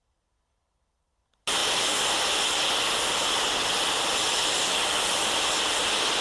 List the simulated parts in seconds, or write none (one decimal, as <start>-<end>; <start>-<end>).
none